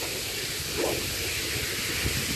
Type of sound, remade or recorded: recorded